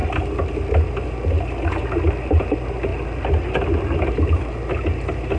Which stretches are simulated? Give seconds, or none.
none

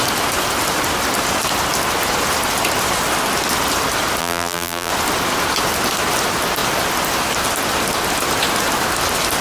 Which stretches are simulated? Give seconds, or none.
4.2-4.9 (vocoder, BigVGAN v2)